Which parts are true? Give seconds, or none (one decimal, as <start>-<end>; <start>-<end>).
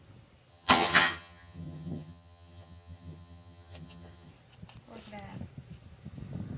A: 0.0-0.5; 4.3-6.6